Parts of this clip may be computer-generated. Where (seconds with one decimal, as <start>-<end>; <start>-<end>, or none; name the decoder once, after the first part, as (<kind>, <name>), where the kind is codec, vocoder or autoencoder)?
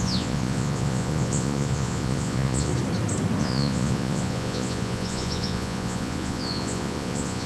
0.0-2.7 (vocoder, Vocos); 3.4-7.5